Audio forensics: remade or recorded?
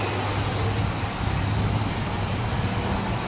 recorded